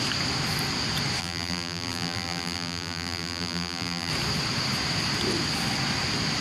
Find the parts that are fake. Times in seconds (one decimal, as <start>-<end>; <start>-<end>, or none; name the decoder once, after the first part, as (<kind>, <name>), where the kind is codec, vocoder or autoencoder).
1.2-4.1 (vocoder, BigVGAN v2)